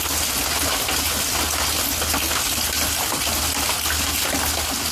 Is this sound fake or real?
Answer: real